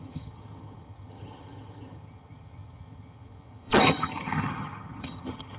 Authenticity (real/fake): fake